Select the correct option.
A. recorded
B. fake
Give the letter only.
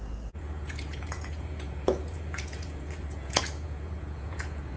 B